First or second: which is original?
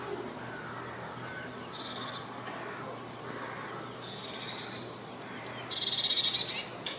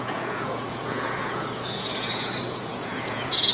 first